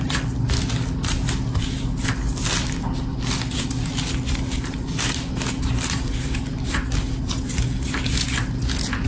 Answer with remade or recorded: recorded